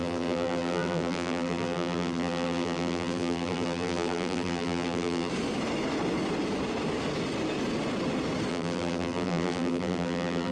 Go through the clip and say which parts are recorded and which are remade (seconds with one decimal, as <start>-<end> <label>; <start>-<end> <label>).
0.0-5.3 remade; 5.3-8.5 recorded; 8.5-10.5 remade